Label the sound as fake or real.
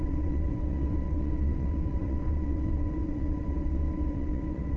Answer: fake